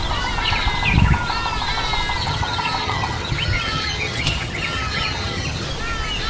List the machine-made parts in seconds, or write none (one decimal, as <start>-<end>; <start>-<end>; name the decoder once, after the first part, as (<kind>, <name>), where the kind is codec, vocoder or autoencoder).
2.2-5.7 (vocoder, HiFi-GAN)